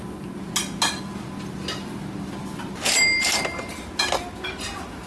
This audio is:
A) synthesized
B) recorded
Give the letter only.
B